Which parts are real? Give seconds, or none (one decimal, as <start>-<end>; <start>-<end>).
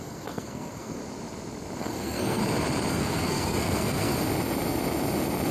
1.0-1.8; 2.4-2.9; 4.1-5.5